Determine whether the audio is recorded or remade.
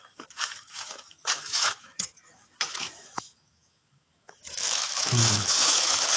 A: remade